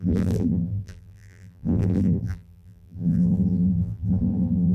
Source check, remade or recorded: remade